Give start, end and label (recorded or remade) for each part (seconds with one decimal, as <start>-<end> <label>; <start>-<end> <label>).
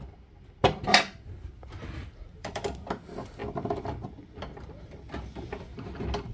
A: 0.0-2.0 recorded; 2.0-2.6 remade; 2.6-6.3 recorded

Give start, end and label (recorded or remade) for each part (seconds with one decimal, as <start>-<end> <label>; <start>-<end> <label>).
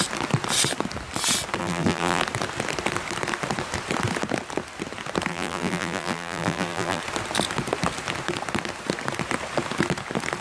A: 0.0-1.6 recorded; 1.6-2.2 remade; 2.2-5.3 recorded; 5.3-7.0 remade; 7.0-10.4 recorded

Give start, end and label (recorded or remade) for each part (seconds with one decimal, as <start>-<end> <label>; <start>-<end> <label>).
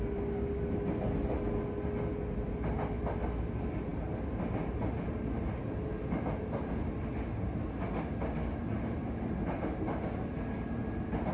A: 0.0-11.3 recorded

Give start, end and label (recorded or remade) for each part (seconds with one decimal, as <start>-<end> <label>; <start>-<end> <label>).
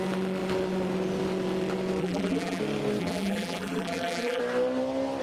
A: 0.0-2.0 recorded; 2.0-2.6 remade; 2.6-3.0 recorded; 3.0-4.4 remade; 4.4-5.2 recorded